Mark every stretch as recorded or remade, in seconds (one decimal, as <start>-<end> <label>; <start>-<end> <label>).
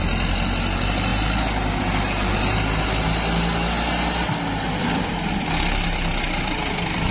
0.0-7.1 recorded